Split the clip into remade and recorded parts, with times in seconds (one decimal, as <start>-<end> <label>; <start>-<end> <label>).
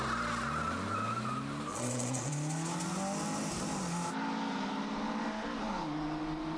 0.0-1.7 recorded; 1.7-2.3 remade; 2.3-6.6 recorded